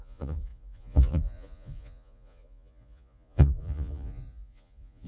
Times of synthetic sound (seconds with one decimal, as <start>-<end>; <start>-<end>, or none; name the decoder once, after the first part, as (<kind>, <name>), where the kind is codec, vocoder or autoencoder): 0.0-5.1 (vocoder, Vocos)